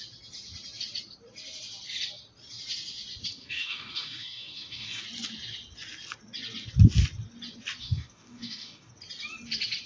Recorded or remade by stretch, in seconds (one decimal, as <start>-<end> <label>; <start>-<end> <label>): 0.0-3.3 recorded; 3.3-5.0 remade; 5.0-7.8 recorded; 7.8-8.9 remade; 8.9-9.9 recorded